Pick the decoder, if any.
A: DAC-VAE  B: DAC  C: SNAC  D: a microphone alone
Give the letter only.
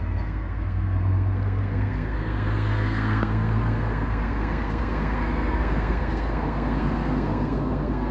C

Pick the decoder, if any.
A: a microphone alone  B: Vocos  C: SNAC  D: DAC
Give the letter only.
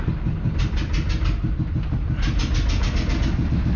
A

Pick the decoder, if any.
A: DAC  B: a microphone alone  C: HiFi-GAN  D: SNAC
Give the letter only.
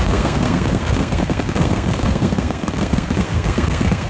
D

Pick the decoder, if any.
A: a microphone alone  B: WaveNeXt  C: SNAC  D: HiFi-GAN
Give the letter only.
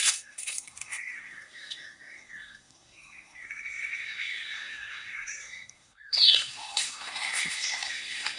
C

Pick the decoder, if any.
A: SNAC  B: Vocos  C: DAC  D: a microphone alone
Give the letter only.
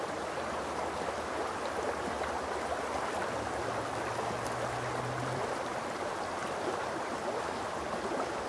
D